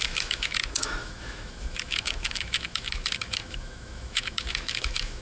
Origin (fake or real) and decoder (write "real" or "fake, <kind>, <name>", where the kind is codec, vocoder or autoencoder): fake, autoencoder, DAC-VAE